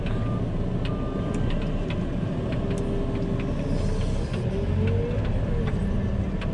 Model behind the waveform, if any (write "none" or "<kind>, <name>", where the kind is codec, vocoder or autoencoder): none